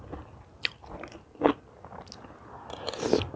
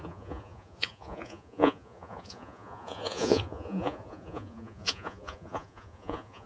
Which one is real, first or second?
first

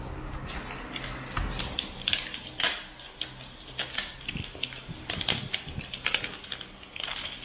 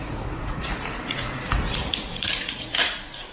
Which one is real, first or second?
first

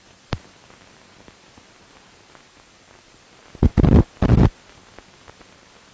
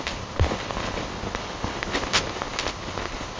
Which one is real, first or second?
first